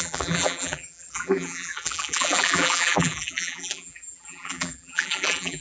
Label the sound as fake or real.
fake